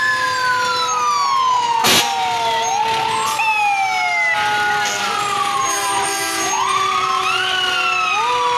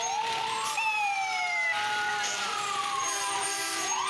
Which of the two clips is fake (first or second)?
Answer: second